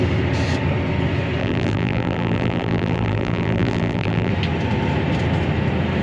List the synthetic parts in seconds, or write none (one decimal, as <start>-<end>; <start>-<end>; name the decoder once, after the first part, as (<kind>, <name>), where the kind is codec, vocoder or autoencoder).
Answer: 1.4-4.3 (vocoder, BigVGAN v2)